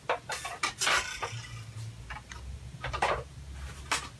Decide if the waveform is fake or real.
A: real